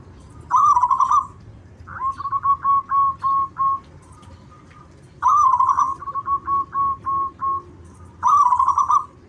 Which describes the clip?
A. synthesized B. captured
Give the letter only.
B